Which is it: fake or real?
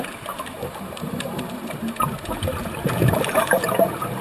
fake